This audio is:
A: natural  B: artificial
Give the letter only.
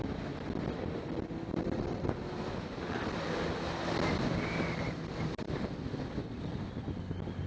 A